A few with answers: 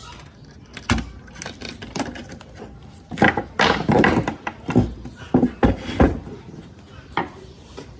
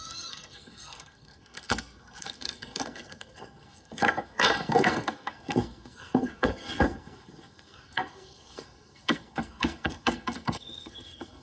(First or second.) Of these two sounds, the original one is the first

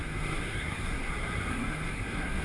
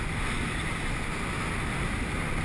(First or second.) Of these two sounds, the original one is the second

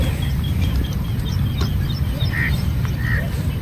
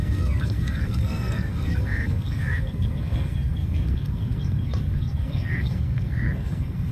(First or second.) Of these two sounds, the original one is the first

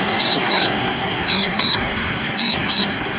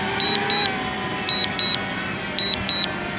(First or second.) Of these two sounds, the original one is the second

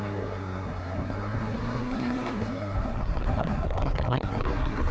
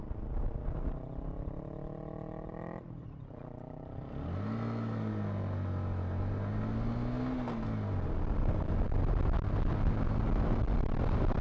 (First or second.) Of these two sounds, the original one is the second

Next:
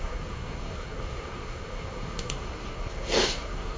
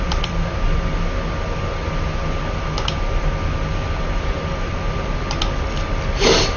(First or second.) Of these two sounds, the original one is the second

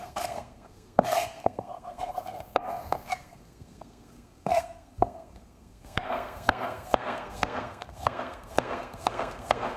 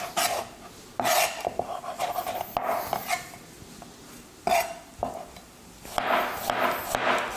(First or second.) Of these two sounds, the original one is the second